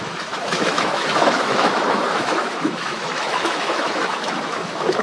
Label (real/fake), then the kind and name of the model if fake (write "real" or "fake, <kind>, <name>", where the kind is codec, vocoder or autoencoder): fake, autoencoder, DAC-VAE